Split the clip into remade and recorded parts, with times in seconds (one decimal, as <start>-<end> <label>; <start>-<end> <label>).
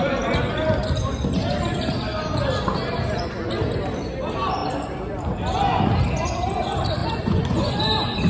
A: 0.0-7.0 recorded; 7.0-7.8 remade; 7.8-8.3 recorded